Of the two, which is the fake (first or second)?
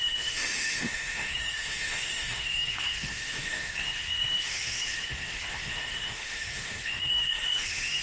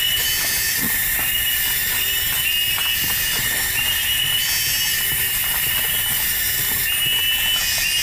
first